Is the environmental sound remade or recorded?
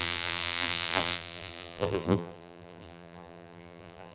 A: remade